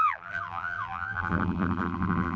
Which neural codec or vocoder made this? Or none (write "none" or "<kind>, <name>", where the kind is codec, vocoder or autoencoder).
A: vocoder, BigVGAN v2